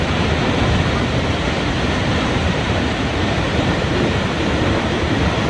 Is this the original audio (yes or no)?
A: no